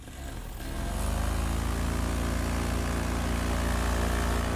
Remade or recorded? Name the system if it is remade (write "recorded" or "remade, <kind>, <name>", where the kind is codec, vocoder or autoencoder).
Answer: recorded